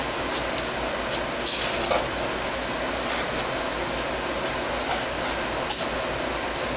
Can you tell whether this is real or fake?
real